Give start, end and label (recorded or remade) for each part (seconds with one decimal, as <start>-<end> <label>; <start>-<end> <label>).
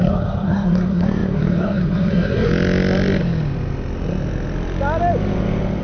0.0-2.5 remade; 2.5-5.8 recorded